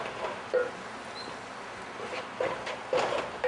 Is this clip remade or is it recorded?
recorded